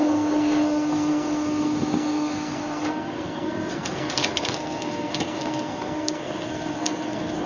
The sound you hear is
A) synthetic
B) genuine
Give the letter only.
A